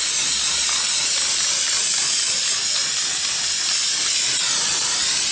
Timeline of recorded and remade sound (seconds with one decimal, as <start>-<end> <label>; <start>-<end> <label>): 0.0-5.3 recorded